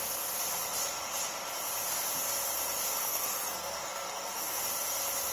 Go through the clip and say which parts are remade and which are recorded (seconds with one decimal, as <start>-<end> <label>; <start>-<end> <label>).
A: 0.0-2.9 recorded; 2.9-4.6 remade; 4.6-5.3 recorded